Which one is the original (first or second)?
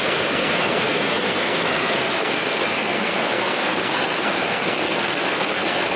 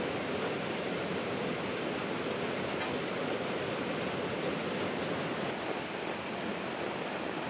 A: second